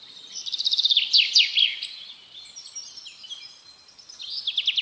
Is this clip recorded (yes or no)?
yes